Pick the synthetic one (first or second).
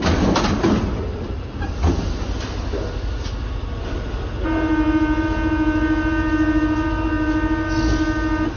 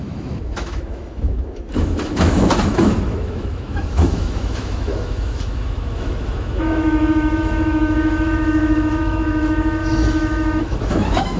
second